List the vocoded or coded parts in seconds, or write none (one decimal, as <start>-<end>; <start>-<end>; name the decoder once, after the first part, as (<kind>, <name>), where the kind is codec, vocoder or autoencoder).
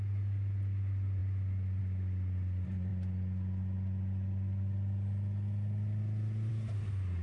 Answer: none